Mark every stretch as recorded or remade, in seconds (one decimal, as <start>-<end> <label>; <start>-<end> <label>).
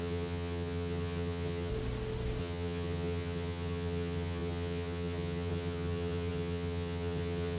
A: 0.0-1.7 remade; 1.7-2.4 recorded; 2.4-7.6 remade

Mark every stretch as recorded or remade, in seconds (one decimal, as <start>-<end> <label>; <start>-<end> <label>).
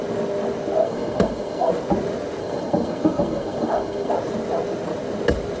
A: 0.0-0.8 recorded; 0.8-1.7 remade; 1.7-2.4 recorded; 2.4-4.1 remade; 4.1-5.6 recorded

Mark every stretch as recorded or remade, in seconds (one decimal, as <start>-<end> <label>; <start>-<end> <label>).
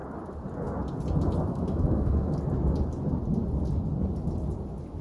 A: 0.0-1.5 recorded; 1.5-2.4 remade; 2.4-5.0 recorded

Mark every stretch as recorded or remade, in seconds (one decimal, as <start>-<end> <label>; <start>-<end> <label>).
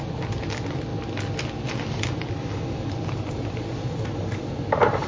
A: 0.0-5.1 recorded